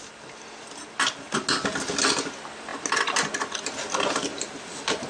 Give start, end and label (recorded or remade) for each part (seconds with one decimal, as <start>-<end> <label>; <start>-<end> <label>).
0.0-4.3 recorded; 4.3-5.1 remade